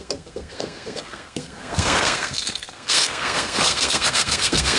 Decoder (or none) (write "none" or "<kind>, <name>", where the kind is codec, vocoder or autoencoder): codec, SNAC